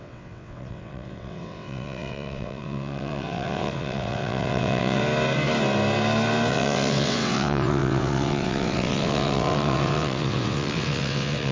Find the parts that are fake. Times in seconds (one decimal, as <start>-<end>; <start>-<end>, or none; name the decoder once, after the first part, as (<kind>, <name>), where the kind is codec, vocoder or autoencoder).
0.0-5.0 (vocoder, WaveNeXt); 6.5-11.5

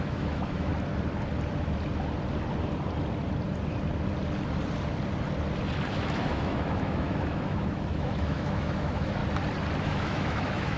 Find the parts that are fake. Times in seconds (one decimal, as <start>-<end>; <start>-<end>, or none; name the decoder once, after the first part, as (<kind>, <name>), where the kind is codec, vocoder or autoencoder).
0.0-0.7 (autoencoder, DAC-VAE); 5.9-9.2; 9.8-10.8

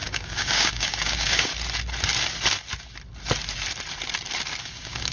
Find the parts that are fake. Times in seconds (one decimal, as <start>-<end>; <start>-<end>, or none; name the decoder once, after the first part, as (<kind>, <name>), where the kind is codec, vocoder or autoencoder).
0.0-1.5 (codec, DAC); 4.6-5.1

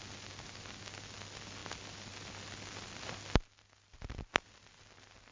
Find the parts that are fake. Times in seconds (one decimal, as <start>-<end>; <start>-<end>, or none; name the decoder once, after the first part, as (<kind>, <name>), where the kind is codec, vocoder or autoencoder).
none

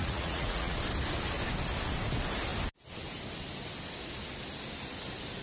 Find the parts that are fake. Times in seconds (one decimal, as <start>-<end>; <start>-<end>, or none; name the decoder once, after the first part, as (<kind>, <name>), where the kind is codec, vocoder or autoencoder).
0.0-0.8 (vocoder, Vocos)